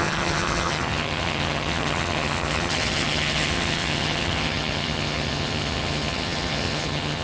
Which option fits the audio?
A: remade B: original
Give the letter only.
A